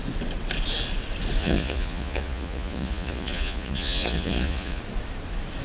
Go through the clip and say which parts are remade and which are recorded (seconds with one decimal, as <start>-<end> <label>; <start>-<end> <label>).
0.0-1.4 recorded; 1.4-4.8 remade; 4.8-5.6 recorded